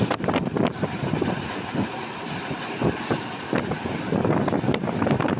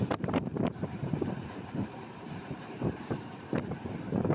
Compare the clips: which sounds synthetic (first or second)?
second